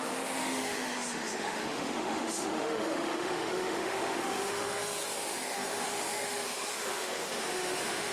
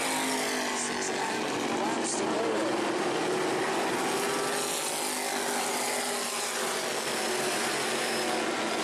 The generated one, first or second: first